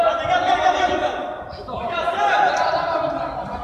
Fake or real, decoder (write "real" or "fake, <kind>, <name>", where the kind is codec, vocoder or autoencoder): real